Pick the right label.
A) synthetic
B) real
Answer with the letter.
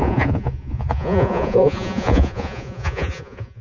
A